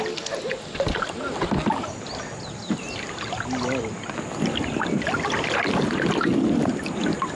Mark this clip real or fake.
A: real